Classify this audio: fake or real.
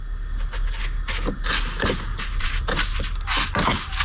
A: real